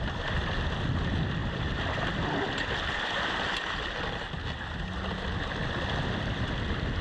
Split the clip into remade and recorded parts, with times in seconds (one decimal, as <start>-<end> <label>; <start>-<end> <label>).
0.0-7.0 recorded